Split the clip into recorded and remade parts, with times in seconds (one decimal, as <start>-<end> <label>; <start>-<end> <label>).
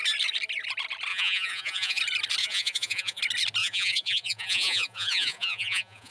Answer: 0.0-1.1 recorded; 1.1-2.0 remade; 2.0-2.4 recorded; 2.4-3.2 remade; 3.2-3.6 recorded; 3.6-6.1 remade